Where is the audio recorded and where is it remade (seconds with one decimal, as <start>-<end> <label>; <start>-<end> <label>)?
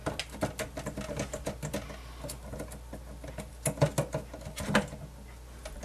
0.0-5.8 recorded